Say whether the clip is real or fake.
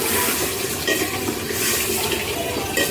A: real